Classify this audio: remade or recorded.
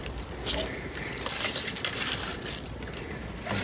recorded